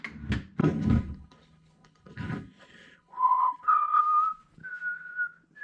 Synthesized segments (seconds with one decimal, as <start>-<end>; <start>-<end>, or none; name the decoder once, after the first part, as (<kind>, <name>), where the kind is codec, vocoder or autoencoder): 0.6-4.0 (codec, HILCodec)